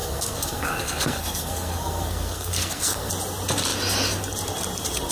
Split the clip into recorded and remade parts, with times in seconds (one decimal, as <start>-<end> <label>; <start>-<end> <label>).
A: 0.0-3.1 remade; 3.1-5.1 recorded

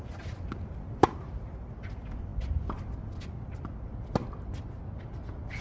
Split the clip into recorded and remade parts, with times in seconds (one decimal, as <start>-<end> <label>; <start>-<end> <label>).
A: 0.0-5.6 recorded

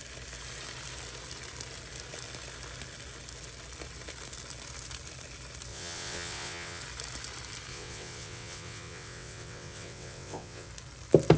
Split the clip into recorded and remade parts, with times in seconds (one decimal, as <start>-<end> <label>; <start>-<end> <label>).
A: 0.0-5.7 recorded; 5.7-6.8 remade; 6.8-7.7 recorded; 7.7-10.7 remade; 10.7-11.4 recorded

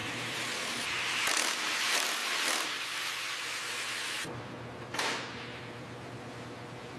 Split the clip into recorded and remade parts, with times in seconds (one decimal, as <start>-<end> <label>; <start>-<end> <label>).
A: 0.0-7.0 recorded

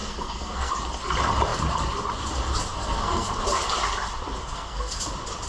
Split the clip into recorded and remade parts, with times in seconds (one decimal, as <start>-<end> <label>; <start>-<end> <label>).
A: 0.0-0.7 remade; 0.7-2.7 recorded; 2.7-3.3 remade; 3.3-4.4 recorded; 4.4-5.0 remade; 5.0-5.5 recorded

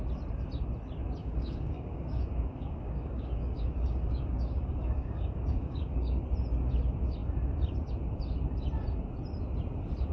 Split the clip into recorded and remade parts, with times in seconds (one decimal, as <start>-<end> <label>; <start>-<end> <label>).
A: 0.0-1.2 recorded; 1.2-6.2 remade; 6.2-10.1 recorded